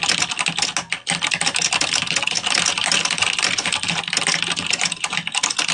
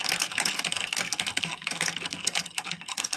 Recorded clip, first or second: first